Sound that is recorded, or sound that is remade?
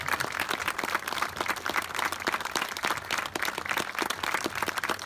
recorded